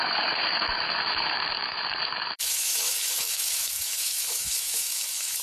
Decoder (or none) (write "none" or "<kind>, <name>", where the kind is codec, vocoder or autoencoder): autoencoder, DAC-VAE